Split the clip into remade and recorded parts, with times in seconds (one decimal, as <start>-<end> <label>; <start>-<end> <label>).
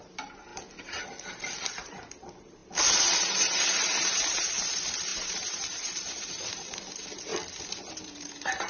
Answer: 0.0-0.5 remade; 0.5-1.6 recorded; 1.6-7.3 remade; 7.3-8.0 recorded; 8.0-8.7 remade